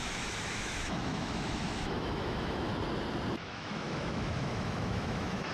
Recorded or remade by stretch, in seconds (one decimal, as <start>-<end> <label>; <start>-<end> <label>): 0.0-2.7 remade; 2.7-3.3 recorded; 3.3-5.5 remade